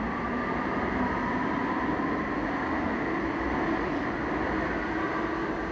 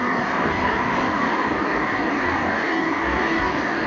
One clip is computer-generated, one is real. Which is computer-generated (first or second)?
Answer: second